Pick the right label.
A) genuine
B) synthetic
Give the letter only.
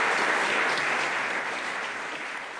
A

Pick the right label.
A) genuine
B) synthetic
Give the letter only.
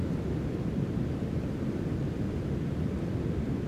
A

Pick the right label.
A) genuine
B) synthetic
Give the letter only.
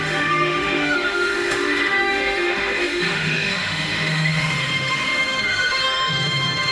B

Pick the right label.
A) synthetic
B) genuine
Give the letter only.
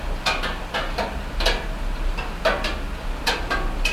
B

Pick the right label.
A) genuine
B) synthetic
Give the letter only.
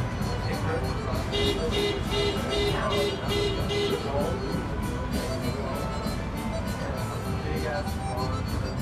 A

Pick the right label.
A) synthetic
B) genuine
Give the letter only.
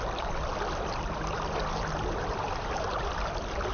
B